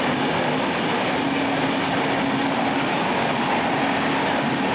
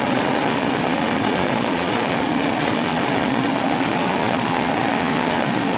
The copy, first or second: second